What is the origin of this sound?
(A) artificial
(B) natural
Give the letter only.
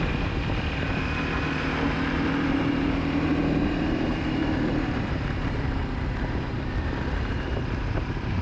A